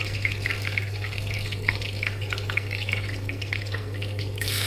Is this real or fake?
fake